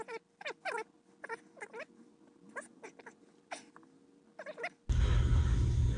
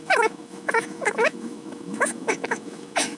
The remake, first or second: second